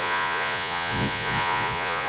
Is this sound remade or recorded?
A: remade